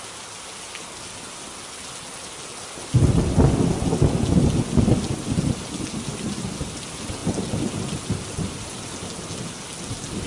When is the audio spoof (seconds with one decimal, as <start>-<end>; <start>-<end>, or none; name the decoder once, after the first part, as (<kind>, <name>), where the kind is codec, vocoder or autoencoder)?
none